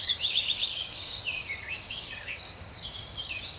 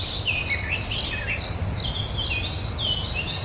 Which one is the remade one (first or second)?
first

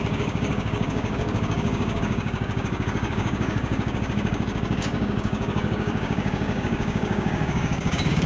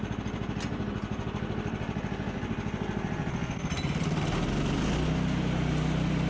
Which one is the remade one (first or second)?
first